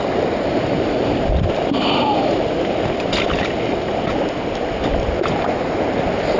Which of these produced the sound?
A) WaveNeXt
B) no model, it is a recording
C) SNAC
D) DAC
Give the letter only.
B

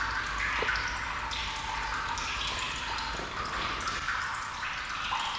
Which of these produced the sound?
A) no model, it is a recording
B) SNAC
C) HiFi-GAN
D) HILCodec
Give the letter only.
A